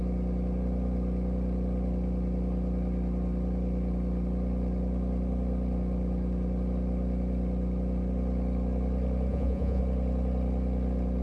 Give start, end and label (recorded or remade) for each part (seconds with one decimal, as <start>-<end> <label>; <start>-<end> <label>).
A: 0.0-9.3 recorded; 9.3-9.8 remade; 9.8-11.2 recorded